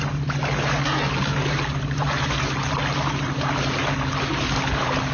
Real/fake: real